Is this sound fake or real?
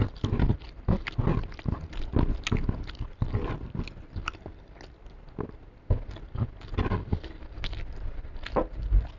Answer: real